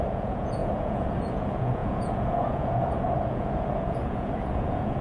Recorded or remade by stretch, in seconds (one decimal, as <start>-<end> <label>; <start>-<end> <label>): 0.0-5.0 remade